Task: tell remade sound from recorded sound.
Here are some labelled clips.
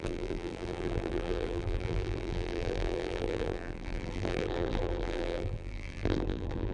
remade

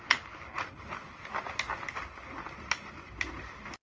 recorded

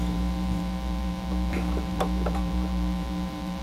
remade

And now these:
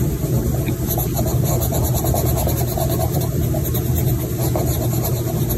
recorded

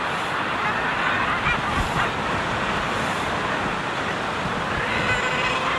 recorded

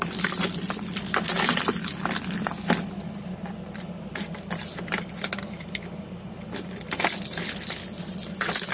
recorded